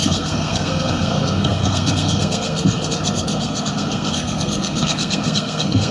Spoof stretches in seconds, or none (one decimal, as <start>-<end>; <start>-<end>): 0.0-5.9